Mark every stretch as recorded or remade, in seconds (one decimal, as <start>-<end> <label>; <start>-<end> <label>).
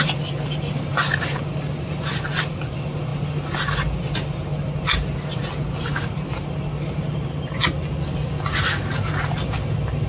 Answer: 0.0-10.1 recorded